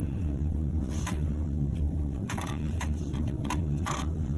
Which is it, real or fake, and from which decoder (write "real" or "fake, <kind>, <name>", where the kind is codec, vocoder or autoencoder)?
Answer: fake, vocoder, WaveNeXt